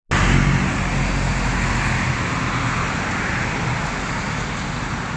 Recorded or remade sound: recorded